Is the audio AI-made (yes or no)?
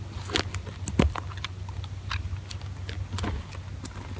no